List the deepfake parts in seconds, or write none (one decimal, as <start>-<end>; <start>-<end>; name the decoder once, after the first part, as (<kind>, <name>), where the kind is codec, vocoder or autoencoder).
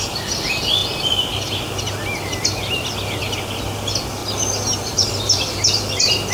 none